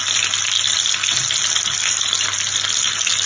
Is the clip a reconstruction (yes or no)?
no